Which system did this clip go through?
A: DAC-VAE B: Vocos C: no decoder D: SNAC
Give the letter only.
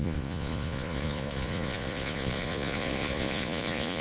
B